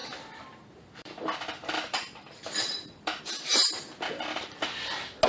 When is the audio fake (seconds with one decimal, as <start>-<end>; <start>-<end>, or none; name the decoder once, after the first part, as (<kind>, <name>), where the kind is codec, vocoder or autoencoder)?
0.0-3.2 (vocoder, BigVGAN v2)